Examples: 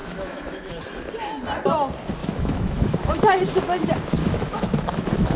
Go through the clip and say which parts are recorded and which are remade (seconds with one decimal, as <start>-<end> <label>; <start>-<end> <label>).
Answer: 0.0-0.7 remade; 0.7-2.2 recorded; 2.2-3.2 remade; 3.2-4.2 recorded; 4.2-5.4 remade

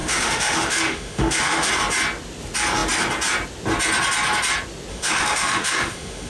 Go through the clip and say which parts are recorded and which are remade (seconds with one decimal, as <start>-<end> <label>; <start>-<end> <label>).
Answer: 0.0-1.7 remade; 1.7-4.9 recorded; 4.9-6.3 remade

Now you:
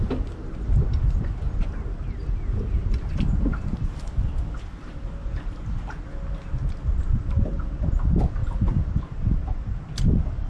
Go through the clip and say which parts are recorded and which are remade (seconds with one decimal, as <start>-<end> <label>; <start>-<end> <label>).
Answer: 0.0-10.5 recorded